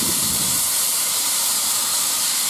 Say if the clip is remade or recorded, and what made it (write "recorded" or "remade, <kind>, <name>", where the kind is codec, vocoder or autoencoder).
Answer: remade, vocoder, BigVGAN v2